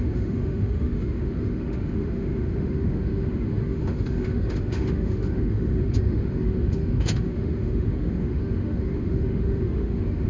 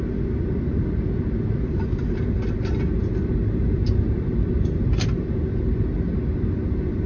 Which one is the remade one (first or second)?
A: first